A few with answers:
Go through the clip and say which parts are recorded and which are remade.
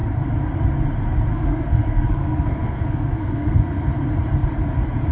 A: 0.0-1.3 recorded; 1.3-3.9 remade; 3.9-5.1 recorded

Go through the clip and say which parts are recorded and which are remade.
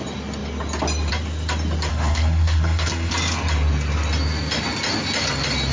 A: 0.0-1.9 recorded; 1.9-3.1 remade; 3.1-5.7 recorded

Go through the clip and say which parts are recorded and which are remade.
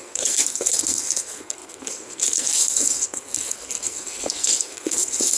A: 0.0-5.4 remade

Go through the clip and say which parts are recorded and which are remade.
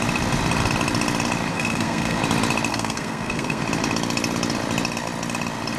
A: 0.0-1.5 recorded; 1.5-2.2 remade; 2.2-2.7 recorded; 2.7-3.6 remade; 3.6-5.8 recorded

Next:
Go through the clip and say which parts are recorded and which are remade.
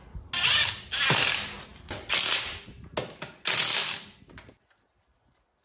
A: 0.0-5.6 recorded